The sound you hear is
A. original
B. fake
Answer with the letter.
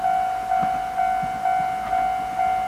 A